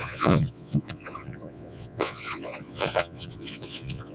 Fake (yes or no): yes